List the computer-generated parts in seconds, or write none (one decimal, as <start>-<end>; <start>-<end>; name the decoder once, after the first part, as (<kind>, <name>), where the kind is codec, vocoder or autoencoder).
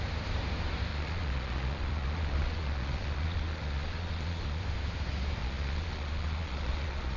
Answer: 0.9-4.6 (vocoder, Vocos); 5.4-7.2